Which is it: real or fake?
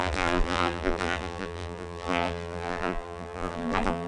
fake